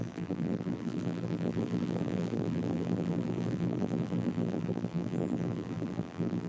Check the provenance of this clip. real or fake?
fake